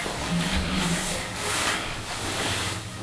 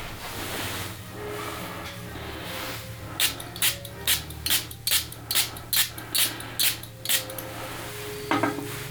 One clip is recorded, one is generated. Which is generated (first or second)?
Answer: first